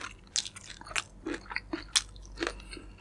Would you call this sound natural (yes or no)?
yes